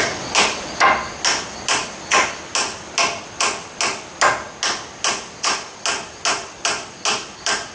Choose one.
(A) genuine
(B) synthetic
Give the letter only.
A